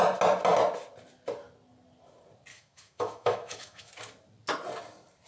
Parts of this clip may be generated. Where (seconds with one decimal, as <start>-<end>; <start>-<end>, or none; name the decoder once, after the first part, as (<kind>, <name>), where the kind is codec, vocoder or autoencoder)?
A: 2.5-3.9 (autoencoder, DAC-VAE)